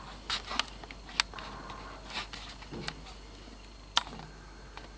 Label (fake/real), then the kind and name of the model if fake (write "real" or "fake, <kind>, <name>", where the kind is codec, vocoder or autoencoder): real